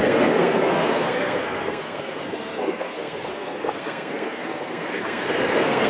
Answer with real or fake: fake